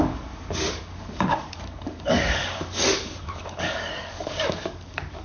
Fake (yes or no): yes